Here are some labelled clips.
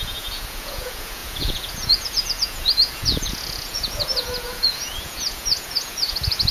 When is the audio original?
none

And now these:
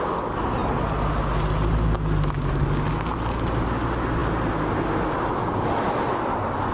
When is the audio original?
0.0-6.7

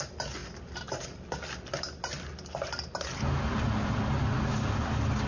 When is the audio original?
0.0-0.4; 1.3-5.3

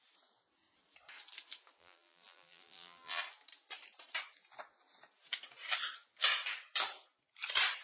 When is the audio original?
0.0-1.8; 3.2-7.8

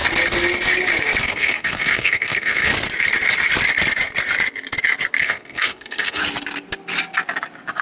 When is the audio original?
0.0-1.2; 2.7-5.2; 6.2-7.8

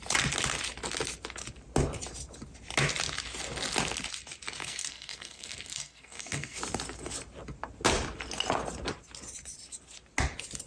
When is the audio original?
0.0-4.6; 6.6-10.7

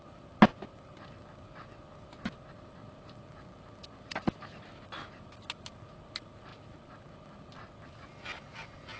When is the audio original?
0.0-9.0

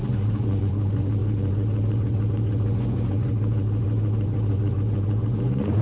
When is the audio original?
none